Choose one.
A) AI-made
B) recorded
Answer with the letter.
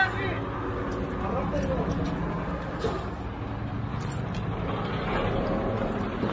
B